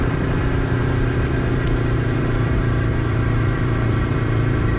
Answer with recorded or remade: remade